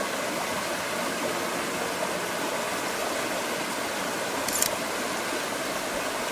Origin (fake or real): real